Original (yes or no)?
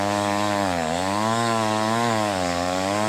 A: no